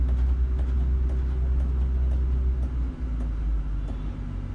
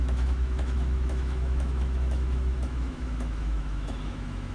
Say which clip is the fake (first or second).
second